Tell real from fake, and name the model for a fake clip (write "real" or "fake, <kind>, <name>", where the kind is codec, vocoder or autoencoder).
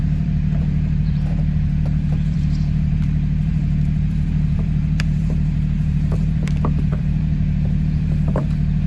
fake, vocoder, BigVGAN v2